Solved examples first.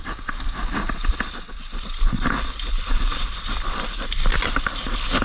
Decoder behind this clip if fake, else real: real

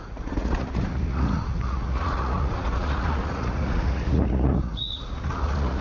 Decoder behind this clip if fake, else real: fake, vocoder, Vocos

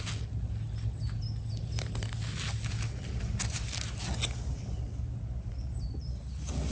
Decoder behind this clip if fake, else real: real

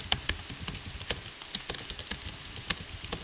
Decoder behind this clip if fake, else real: real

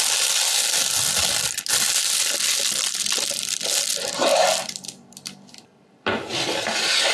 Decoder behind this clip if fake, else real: real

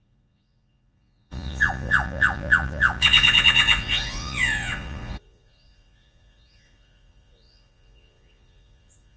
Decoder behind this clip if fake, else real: fake, vocoder, Vocos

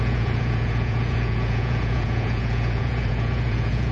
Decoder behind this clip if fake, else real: fake, vocoder, Vocos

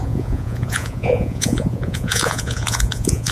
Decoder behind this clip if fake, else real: fake, vocoder, Vocos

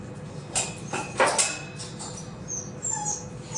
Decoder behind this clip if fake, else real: real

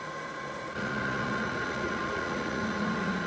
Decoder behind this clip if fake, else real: fake, vocoder, Vocos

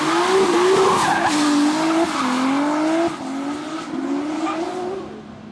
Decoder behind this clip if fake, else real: real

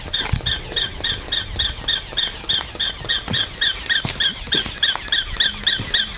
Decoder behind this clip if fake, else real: real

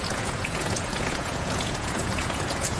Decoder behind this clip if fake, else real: fake, vocoder, Vocos